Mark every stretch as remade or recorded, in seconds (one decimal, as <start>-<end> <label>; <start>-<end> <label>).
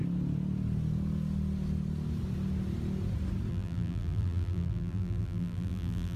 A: 0.0-3.5 recorded; 3.5-6.2 remade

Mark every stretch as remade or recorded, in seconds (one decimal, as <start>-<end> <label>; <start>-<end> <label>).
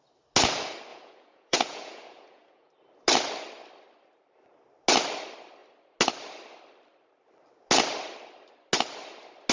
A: 0.0-0.9 recorded; 0.9-2.7 remade; 2.7-9.5 recorded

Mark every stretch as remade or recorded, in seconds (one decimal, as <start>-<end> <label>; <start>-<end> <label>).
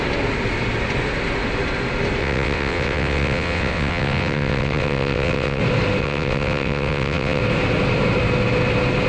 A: 0.0-2.2 recorded; 2.2-5.6 remade; 5.6-6.0 recorded; 6.0-7.4 remade; 7.4-9.1 recorded